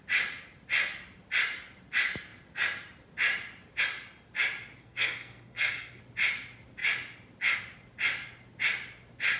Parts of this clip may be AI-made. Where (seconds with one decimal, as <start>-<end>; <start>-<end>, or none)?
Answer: 4.8-6.0